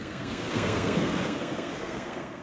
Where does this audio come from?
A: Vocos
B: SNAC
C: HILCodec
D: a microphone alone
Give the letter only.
B